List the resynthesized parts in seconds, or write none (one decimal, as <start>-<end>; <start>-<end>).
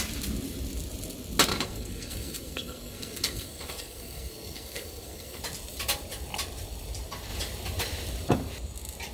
1.5-5.4